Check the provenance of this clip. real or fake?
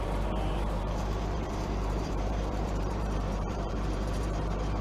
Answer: fake